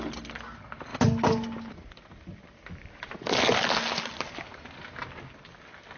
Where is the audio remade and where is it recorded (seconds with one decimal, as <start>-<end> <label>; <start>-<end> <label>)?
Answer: 0.0-6.0 recorded

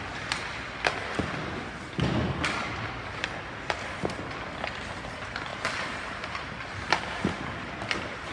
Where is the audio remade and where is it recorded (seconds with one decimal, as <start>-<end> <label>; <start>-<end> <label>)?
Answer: 0.0-5.5 recorded; 5.5-6.5 remade; 6.5-8.3 recorded

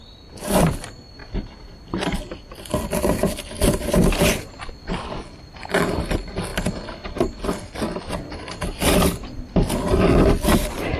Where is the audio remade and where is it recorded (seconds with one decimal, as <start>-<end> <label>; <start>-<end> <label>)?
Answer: 0.0-1.2 recorded; 1.2-4.7 remade; 4.7-11.0 recorded

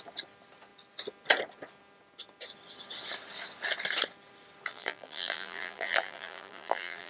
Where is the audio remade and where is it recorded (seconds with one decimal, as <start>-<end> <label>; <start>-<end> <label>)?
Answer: 0.0-4.7 recorded; 4.7-7.1 remade

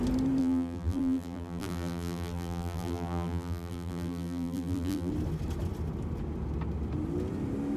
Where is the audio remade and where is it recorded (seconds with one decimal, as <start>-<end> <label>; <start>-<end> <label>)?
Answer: 0.0-0.4 recorded; 0.4-5.1 remade; 5.1-7.8 recorded

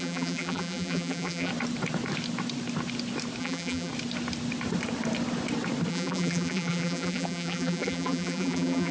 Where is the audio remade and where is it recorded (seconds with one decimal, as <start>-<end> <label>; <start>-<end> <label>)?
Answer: 0.0-1.5 remade; 1.5-3.4 recorded; 3.4-3.9 remade; 3.9-5.9 recorded; 5.9-8.9 remade

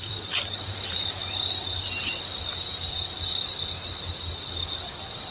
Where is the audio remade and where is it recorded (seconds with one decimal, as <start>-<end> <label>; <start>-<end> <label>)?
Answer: 0.0-5.3 remade